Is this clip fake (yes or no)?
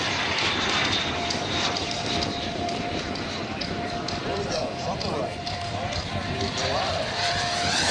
yes